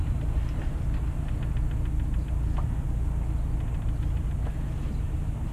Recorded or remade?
recorded